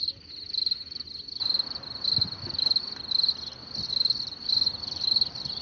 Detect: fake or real real